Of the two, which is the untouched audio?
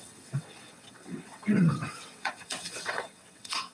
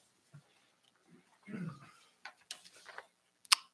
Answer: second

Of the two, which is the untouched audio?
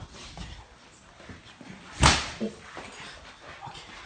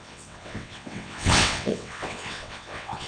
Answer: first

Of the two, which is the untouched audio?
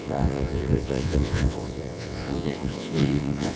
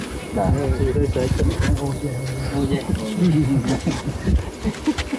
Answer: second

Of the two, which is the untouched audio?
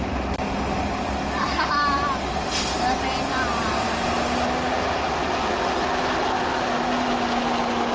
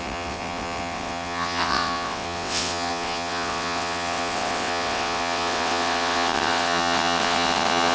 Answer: first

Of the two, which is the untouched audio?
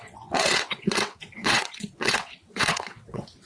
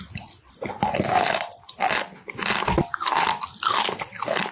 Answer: second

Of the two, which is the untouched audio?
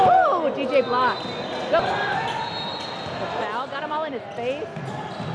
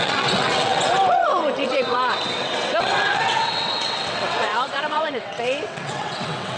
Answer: first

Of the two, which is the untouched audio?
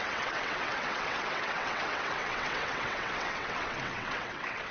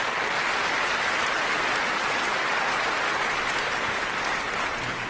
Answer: second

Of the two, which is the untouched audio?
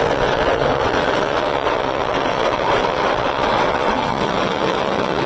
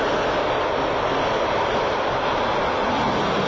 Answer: second